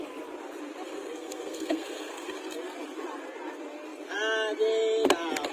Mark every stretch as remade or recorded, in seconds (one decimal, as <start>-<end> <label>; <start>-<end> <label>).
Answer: 0.0-0.9 recorded; 0.9-2.3 remade; 2.3-5.5 recorded